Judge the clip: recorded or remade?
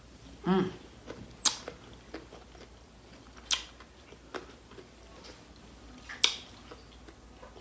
recorded